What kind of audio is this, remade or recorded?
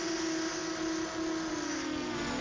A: recorded